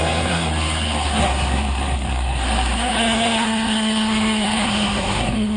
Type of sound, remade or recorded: remade